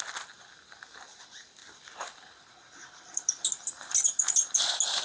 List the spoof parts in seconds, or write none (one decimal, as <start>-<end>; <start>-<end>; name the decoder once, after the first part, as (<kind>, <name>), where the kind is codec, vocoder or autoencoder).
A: none